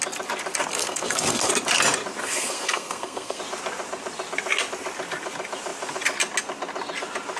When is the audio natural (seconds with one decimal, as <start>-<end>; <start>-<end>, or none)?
0.0-0.7; 1.5-2.2; 3.4-7.4